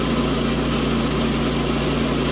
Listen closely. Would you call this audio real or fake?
real